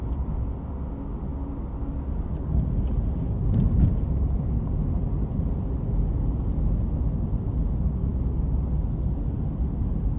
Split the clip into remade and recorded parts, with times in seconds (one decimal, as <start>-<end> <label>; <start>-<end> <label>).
0.0-10.2 recorded